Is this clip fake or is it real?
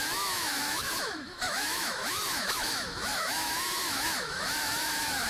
fake